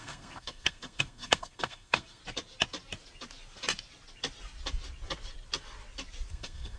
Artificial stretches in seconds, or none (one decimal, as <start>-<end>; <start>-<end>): 0.0-2.2; 6.3-6.8